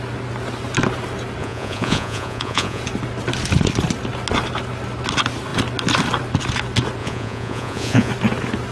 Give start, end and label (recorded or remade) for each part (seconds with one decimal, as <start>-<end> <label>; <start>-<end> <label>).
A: 0.0-1.4 recorded; 1.4-2.8 remade; 2.8-7.0 recorded; 7.0-8.1 remade; 8.1-8.7 recorded